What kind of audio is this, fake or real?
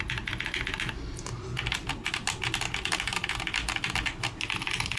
real